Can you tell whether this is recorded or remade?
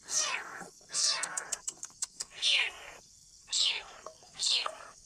remade